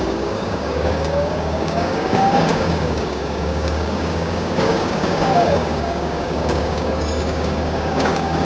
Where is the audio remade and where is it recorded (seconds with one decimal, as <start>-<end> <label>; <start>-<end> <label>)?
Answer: 0.0-8.4 remade